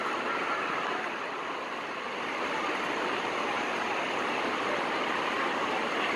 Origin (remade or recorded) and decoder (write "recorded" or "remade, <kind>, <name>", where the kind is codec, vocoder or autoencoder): recorded